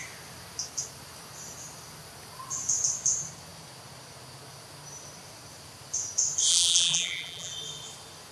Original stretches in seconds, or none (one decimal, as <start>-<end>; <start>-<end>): 0.0-6.5; 7.5-8.3